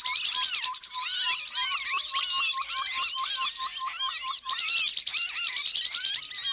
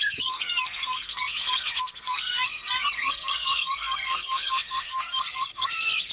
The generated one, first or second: second